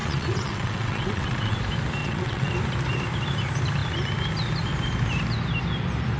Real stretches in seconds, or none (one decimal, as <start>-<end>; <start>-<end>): 1.6-2.0; 2.5-6.2